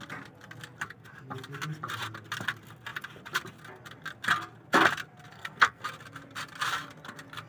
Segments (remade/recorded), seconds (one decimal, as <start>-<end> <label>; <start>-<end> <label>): 0.0-5.3 recorded; 5.3-5.8 remade; 5.8-7.5 recorded

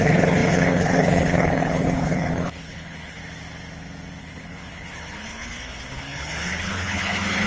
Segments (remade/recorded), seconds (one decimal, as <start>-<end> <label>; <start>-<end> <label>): 0.0-3.2 remade; 3.2-4.2 recorded; 4.2-7.5 remade

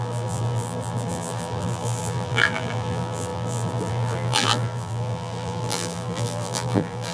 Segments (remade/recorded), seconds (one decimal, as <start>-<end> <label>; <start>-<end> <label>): 0.0-7.1 remade

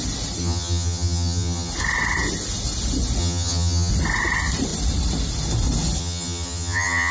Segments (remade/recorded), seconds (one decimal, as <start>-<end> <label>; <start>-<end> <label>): 0.0-0.4 recorded; 0.4-1.7 remade; 1.7-3.2 recorded; 3.2-3.9 remade; 3.9-6.0 recorded; 6.0-7.1 remade

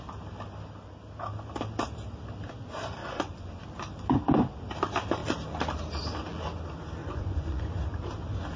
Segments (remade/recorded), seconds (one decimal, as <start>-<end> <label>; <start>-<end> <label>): 0.0-3.0 recorded; 3.0-3.5 remade; 3.5-7.0 recorded; 7.0-7.6 remade; 7.6-8.6 recorded